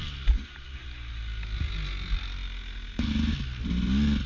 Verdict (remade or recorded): recorded